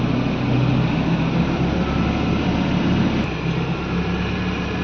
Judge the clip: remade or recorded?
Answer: recorded